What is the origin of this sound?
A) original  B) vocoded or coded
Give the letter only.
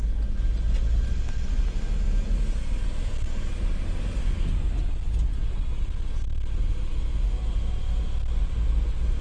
A